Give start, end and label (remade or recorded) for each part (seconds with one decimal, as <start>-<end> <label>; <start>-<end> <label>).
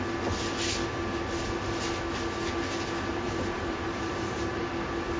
0.0-3.1 recorded; 3.1-4.7 remade; 4.7-5.2 recorded